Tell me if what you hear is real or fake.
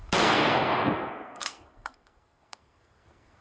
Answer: fake